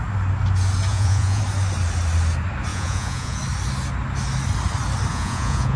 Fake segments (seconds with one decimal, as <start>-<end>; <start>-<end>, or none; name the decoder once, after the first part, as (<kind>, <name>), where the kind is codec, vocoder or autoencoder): 0.9-1.4 (vocoder, Vocos); 2.7-3.4; 5.1-5.8